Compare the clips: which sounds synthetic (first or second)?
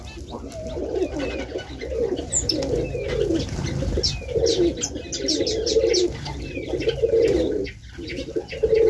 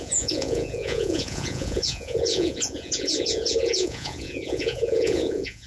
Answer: second